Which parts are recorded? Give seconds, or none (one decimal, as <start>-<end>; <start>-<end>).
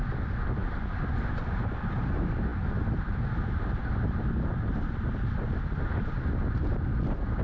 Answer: 0.0-7.4